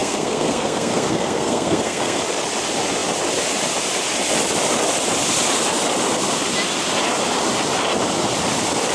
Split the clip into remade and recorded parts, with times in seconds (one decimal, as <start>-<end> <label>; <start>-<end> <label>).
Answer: 0.0-2.2 remade; 2.2-8.9 recorded